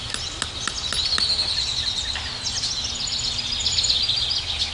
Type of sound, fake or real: real